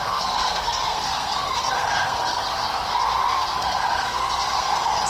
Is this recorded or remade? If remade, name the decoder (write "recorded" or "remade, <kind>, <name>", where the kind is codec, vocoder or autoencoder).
remade, codec, SNAC